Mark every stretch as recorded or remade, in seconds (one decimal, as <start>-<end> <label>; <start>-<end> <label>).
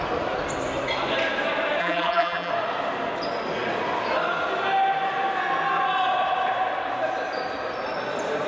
0.0-1.8 recorded; 1.8-2.5 remade; 2.5-8.5 recorded